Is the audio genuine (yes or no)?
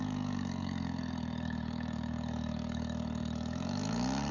no